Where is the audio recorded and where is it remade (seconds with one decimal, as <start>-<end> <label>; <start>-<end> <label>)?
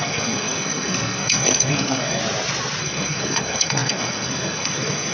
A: 0.0-2.2 remade; 2.2-2.8 recorded; 2.8-5.1 remade